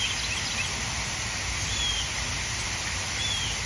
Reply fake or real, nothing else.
real